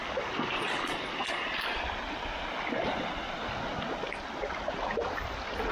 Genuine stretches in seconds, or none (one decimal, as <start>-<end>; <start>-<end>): 0.0-5.7